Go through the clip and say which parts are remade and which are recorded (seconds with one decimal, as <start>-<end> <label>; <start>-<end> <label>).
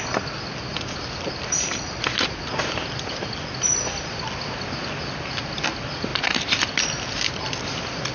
0.0-8.1 recorded